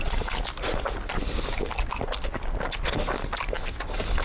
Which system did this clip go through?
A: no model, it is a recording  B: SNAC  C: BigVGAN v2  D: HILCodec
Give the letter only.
A